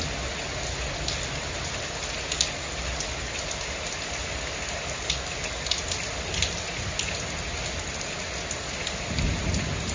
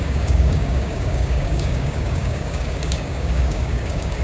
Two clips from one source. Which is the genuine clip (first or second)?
first